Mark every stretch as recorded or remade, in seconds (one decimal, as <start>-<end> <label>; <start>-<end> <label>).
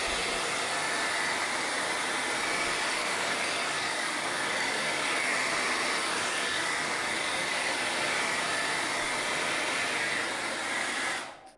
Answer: 0.0-2.9 recorded; 2.9-5.4 remade; 5.4-6.0 recorded; 6.0-7.7 remade; 7.7-11.6 recorded